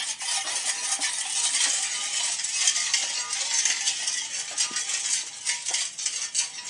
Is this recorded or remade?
recorded